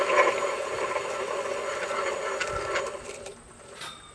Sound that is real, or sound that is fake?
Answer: real